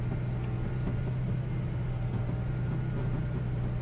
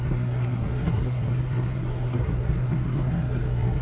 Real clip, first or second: first